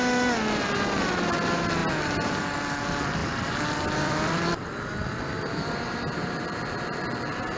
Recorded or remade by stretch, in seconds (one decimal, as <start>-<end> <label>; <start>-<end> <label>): 0.0-3.2 recorded; 3.2-7.0 remade; 7.0-7.6 recorded